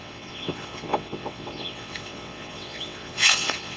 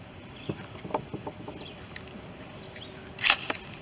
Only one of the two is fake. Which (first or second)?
first